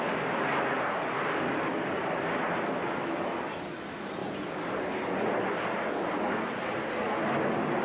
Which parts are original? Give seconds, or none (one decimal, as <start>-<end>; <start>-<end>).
0.0-7.8